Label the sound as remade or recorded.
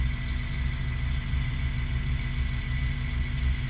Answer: recorded